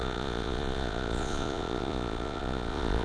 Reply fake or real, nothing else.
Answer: fake